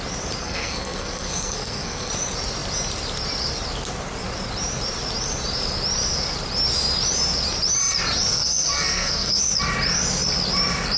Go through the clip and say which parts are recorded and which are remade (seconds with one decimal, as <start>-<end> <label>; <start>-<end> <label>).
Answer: 0.0-0.4 recorded; 0.4-2.1 remade; 2.1-8.3 recorded; 8.3-9.4 remade; 9.4-11.0 recorded